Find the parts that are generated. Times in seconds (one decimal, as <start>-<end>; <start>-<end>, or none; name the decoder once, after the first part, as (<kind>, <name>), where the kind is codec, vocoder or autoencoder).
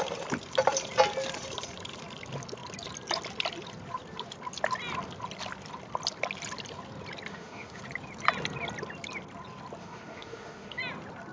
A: 7.3-7.8 (autoencoder, DAC-VAE); 9.8-10.8